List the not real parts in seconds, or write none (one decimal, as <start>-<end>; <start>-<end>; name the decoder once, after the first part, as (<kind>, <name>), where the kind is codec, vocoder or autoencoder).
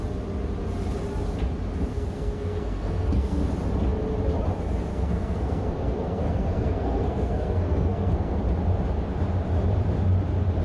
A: 1.9-3.5 (codec, SNAC); 4.9-8.4